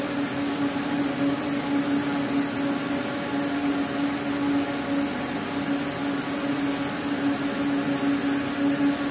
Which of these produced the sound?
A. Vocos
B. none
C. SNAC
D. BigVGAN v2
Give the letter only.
B